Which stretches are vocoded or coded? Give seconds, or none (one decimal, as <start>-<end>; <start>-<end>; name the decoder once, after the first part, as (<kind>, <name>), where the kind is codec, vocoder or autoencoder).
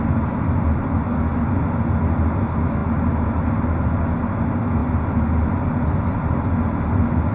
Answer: none